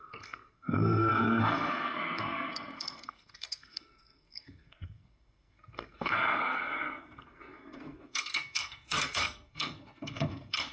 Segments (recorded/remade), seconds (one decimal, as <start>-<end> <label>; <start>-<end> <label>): 0.0-10.7 remade

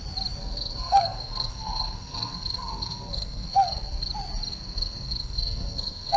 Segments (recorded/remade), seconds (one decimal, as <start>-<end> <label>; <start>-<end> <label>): 0.0-0.4 recorded; 0.4-4.1 remade; 4.1-4.5 recorded; 4.5-6.2 remade

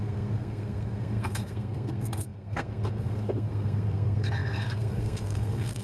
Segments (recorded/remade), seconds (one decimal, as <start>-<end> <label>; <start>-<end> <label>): 0.0-5.8 remade

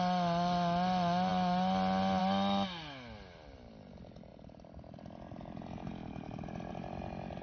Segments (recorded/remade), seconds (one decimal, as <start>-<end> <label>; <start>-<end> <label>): 0.0-7.4 recorded

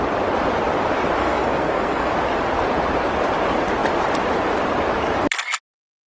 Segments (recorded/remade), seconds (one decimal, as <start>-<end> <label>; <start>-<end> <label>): 0.0-1.2 recorded; 1.2-2.1 remade; 2.1-6.1 recorded